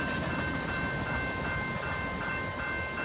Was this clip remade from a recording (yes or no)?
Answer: no